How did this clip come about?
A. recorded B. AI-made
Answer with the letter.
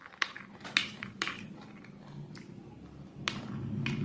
A